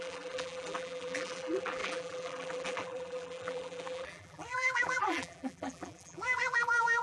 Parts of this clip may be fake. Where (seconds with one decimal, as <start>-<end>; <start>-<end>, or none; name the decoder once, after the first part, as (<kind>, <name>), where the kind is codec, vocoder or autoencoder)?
0.0-7.0 (vocoder, BigVGAN v2)